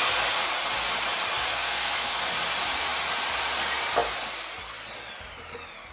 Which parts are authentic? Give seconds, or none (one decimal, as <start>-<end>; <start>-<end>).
0.0-1.5; 2.2-5.9